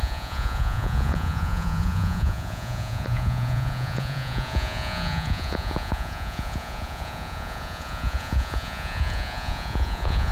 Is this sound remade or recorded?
remade